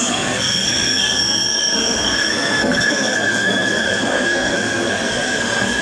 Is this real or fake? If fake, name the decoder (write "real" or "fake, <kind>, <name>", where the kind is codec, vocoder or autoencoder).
fake, codec, SNAC